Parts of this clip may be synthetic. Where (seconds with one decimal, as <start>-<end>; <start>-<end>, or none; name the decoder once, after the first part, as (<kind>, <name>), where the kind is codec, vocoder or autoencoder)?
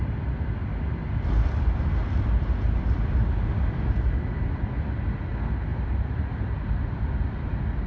5.7-7.1 (vocoder, BigVGAN v2)